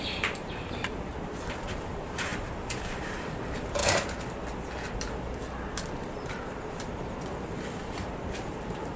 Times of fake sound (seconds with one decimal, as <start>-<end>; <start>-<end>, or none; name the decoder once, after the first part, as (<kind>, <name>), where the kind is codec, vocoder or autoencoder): 0.0-3.8 (vocoder, BigVGAN v2); 7.9-9.0